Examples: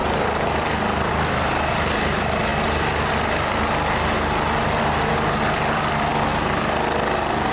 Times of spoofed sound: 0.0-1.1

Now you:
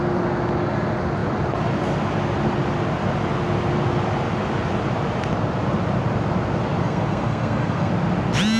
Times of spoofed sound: 6.8-7.9

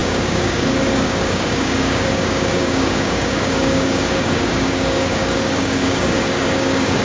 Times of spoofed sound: 0.0-7.0

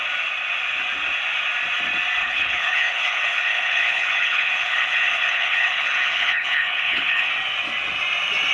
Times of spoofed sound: 2.2-7.3

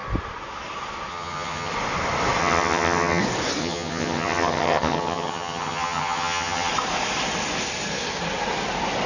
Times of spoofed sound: 1.1-1.7; 2.4-3.2; 3.6-6.7

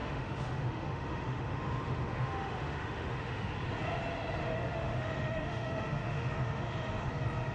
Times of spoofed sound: 0.0-3.5; 4.4-7.1

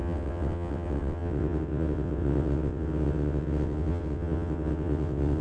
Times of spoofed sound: 0.0-5.4